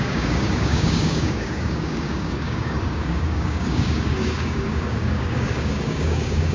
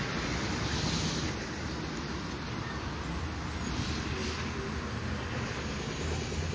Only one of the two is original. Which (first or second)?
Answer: second